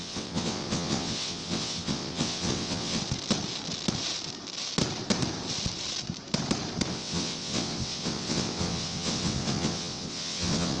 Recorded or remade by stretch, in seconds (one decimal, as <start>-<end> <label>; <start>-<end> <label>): 0.0-3.0 remade; 3.0-6.9 recorded; 6.9-10.8 remade